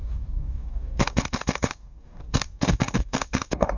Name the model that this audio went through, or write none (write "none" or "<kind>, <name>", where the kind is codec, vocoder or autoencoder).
codec, DAC